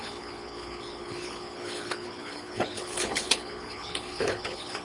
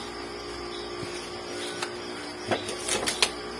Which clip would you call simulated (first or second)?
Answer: first